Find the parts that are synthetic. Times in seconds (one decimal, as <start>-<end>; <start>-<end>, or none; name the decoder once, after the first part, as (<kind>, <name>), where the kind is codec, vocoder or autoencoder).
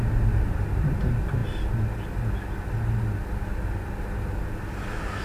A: none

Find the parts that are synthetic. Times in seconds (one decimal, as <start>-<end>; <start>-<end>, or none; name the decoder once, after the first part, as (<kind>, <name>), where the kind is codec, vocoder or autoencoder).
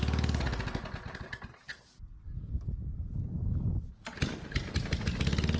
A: none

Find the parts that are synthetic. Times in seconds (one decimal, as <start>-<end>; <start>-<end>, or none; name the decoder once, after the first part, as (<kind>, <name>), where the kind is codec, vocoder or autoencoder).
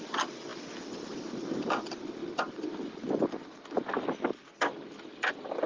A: none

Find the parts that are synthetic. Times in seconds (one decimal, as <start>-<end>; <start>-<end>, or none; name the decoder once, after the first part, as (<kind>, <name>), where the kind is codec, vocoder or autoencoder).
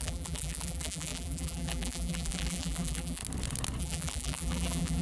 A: 0.0-3.2 (vocoder, BigVGAN v2); 3.8-5.0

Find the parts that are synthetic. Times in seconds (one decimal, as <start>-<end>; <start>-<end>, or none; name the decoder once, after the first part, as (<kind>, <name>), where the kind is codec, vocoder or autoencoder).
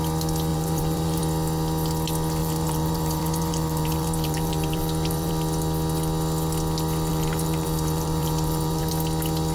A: 0.5-1.2 (vocoder, BigVGAN v2); 2.4-5.3; 7.1-8.9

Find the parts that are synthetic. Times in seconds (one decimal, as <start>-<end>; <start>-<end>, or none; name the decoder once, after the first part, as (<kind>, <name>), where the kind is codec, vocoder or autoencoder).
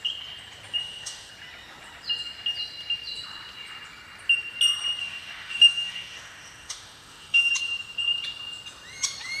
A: 0.8-1.3 (autoencoder, DAC-VAE); 5.0-7.5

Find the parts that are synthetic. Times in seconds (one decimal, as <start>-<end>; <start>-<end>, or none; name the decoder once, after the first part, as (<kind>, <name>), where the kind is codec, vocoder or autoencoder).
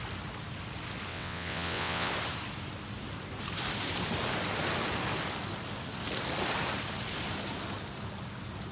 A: 1.1-2.1 (vocoder, WaveNeXt)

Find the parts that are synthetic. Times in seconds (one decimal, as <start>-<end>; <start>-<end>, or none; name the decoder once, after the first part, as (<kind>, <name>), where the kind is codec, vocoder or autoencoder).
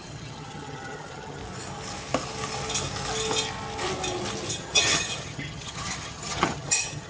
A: 0.0-1.4 (vocoder, HiFi-GAN); 4.5-7.1